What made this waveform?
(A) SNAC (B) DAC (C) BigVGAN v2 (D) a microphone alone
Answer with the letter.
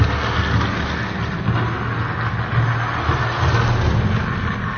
D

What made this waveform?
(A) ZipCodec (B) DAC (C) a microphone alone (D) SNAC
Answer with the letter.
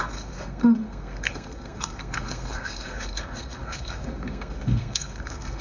D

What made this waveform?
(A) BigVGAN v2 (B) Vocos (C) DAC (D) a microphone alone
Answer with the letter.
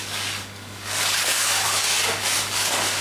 C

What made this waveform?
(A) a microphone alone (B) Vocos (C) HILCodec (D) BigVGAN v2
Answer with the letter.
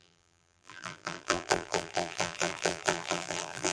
D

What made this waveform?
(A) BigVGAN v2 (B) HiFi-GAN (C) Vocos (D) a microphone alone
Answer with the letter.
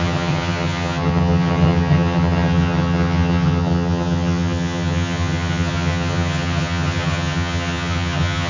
B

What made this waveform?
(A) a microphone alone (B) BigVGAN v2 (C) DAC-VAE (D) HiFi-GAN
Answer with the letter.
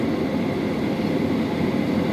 A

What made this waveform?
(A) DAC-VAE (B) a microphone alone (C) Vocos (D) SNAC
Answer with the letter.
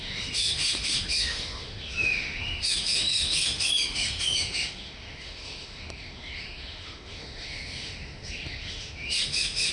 A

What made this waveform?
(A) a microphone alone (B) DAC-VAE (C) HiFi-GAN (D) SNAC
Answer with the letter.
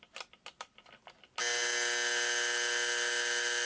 A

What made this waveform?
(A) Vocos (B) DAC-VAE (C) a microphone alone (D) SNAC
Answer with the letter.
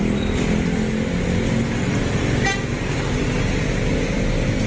C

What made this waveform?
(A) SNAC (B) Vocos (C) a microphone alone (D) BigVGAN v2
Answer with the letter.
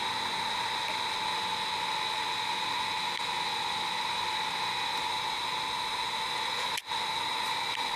C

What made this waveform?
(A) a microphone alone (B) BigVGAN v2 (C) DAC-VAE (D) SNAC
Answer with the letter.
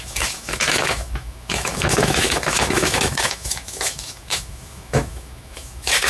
C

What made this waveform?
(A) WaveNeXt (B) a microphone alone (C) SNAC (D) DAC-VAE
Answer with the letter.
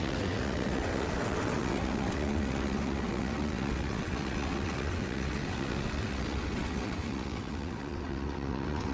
A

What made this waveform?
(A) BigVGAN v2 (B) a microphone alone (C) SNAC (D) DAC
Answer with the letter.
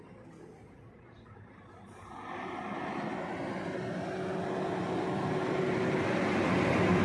B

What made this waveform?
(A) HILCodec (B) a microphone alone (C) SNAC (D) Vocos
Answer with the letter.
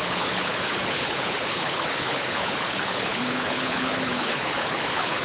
A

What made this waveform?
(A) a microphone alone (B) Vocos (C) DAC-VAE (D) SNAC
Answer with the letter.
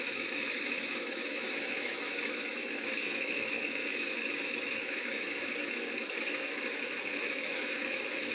C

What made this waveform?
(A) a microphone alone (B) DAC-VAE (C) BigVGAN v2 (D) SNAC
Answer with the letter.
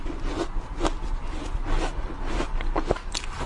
A